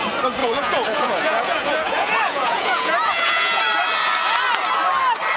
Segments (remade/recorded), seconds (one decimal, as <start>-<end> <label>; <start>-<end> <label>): 0.0-0.4 recorded; 0.4-3.6 remade; 3.6-5.4 recorded